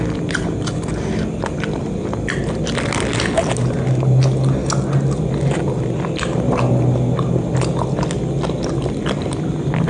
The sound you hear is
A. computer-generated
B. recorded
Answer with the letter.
B